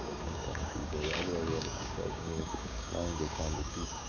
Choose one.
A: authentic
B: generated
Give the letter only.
B